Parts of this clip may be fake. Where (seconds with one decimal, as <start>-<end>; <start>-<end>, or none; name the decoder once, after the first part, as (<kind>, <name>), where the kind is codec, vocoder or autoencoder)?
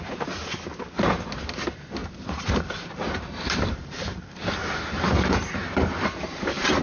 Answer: 2.0-6.1 (vocoder, BigVGAN v2)